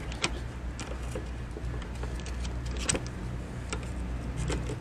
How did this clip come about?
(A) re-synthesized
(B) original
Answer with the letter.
B